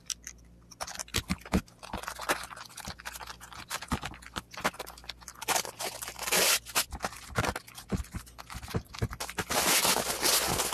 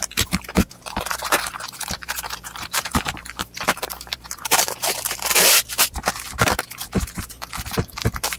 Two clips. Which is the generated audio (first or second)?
second